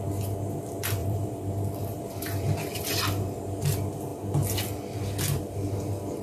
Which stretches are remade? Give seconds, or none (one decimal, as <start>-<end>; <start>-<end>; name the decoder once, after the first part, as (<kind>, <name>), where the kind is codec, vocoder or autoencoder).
1.0-3.0 (vocoder, BigVGAN v2)